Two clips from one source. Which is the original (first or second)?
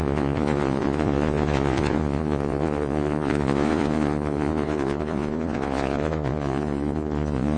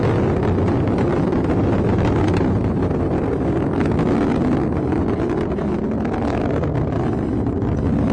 second